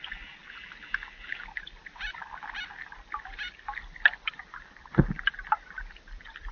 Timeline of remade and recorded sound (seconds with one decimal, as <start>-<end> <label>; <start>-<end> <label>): 0.0-0.4 remade; 0.4-1.4 recorded; 1.4-6.5 remade